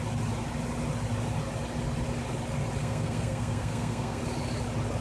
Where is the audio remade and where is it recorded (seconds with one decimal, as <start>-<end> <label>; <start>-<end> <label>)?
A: 0.0-2.8 recorded; 2.8-4.2 remade; 4.2-5.0 recorded